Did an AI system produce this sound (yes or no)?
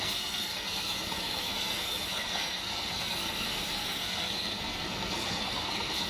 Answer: yes